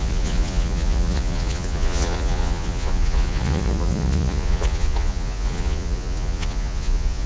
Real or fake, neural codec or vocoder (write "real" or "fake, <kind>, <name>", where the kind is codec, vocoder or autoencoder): fake, vocoder, Vocos